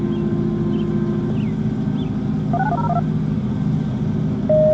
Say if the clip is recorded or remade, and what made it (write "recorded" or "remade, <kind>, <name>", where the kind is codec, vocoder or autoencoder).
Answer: recorded